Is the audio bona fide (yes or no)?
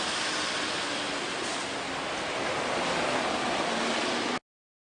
yes